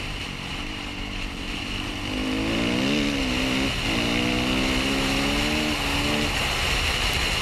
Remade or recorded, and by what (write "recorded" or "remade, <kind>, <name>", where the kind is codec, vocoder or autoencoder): recorded